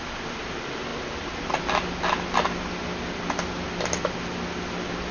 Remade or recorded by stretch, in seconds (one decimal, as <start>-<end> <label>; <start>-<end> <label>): 0.0-5.1 recorded